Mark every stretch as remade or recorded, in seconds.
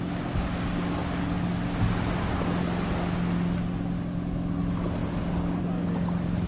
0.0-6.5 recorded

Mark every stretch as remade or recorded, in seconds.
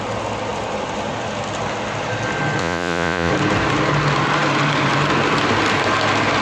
0.0-2.6 recorded; 2.6-3.3 remade; 3.3-6.4 recorded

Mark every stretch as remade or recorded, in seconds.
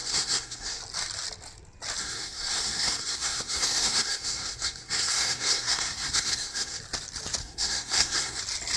0.0-0.8 remade; 0.8-2.0 recorded; 2.0-6.8 remade; 6.8-7.4 recorded; 7.4-8.4 remade; 8.4-8.8 recorded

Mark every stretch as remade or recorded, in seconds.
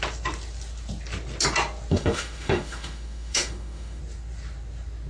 0.0-1.9 recorded; 1.9-4.0 remade; 4.0-5.1 recorded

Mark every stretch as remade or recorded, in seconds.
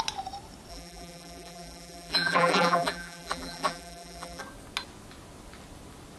0.0-0.7 recorded; 0.7-4.4 remade; 4.4-6.2 recorded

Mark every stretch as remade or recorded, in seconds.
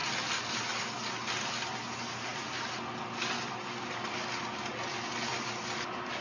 0.0-6.2 recorded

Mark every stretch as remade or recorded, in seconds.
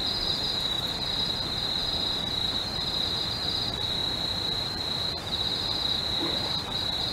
0.0-7.1 recorded